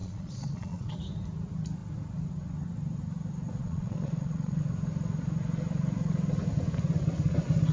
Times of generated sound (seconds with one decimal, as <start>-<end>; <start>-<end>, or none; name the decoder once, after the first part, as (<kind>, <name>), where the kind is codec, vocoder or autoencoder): 0.0-0.9 (vocoder, Vocos); 3.6-4.6